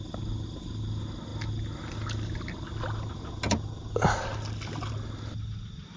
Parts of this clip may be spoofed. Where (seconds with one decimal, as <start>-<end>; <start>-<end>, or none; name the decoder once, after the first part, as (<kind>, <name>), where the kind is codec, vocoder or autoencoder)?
none